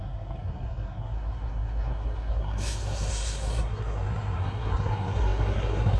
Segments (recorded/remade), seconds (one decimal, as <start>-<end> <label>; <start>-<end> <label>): 0.0-6.0 remade